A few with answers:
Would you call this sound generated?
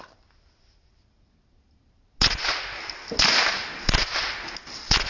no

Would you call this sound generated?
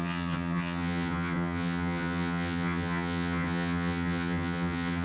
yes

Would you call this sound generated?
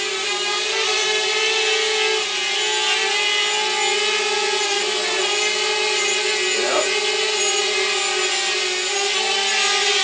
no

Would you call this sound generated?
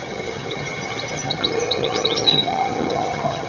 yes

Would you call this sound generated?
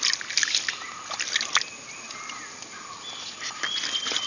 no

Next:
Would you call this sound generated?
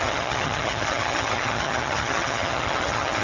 yes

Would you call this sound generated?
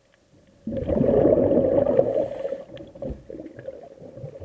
no